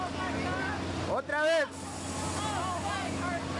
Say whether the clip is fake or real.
real